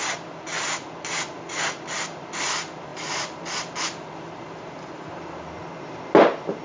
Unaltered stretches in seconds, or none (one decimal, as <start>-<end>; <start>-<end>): 0.0-2.9; 5.4-6.6